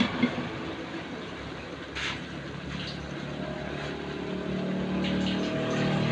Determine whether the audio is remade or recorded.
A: recorded